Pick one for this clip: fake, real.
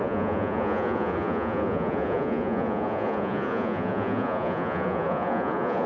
fake